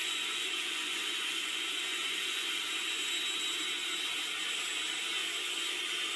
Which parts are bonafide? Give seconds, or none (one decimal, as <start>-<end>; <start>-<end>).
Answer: 3.1-5.2; 5.7-6.2